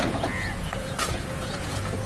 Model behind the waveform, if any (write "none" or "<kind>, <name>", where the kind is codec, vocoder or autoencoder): vocoder, Vocos